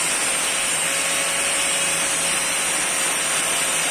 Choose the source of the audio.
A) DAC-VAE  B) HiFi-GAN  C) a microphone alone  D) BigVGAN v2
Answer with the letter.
C